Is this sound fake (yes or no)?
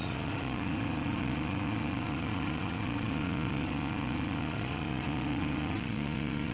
yes